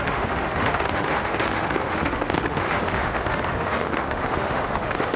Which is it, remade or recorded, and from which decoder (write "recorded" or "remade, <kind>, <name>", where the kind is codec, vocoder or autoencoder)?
remade, autoencoder, DAC-VAE